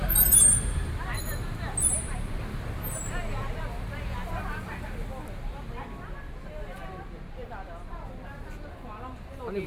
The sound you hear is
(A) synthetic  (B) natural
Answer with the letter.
B